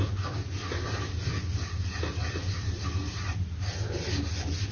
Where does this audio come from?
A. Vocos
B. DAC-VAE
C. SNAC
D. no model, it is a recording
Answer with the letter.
D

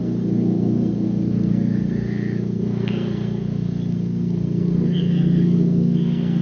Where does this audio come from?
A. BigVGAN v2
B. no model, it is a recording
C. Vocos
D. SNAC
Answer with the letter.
D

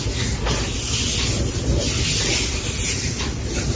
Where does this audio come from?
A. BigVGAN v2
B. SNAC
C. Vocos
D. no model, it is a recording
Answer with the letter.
D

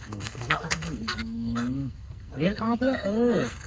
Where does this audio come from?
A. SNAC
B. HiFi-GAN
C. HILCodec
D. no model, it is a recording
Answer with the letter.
A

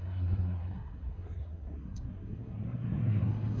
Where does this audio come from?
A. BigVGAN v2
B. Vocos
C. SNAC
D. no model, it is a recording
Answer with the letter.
C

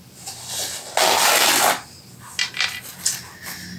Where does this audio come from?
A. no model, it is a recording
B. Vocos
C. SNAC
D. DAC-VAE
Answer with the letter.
A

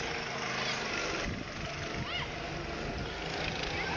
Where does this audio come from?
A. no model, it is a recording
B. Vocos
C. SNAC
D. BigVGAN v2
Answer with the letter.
A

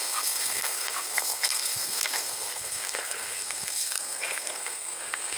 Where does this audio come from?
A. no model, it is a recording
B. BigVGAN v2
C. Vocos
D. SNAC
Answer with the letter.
D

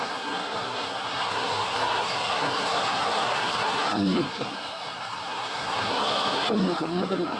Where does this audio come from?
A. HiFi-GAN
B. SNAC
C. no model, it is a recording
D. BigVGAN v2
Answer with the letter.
B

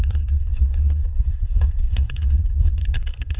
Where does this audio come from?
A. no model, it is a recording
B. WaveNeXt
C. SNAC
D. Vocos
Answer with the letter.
C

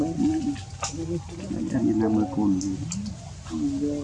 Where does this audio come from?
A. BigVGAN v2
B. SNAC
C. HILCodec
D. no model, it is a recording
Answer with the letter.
D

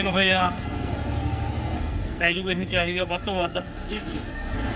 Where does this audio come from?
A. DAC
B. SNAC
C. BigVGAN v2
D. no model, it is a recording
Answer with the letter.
B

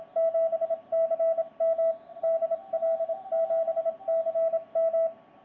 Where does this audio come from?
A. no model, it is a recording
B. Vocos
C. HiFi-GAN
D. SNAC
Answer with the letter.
A